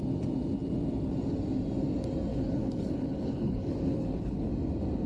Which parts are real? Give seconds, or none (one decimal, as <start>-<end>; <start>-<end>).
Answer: 0.0-2.3; 4.5-5.1